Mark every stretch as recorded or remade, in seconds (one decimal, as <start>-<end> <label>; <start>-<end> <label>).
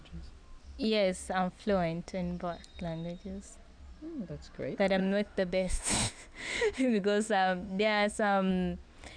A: 0.0-5.0 recorded; 5.0-8.5 remade; 8.5-9.2 recorded